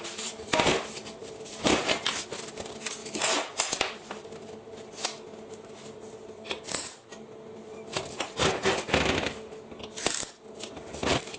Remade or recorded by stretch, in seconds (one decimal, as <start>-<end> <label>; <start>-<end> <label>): 0.0-3.0 recorded; 3.0-4.8 remade; 4.8-11.4 recorded